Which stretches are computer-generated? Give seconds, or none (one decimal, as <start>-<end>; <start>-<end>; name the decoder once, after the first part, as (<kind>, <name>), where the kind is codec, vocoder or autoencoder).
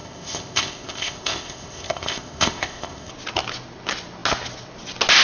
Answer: 0.0-3.1 (codec, ZipCodec)